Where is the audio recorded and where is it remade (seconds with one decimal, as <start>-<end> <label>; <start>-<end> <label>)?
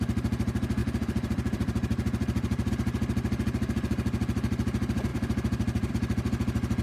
0.0-0.8 recorded; 0.8-2.7 remade; 2.7-5.1 recorded; 5.1-5.9 remade; 5.9-6.8 recorded